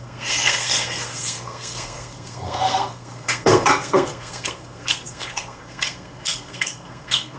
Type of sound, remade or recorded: remade